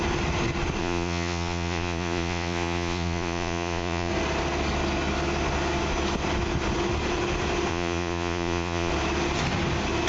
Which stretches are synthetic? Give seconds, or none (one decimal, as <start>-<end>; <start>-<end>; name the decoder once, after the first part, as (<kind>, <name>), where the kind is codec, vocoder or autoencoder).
0.8-4.1 (vocoder, Vocos); 7.7-8.9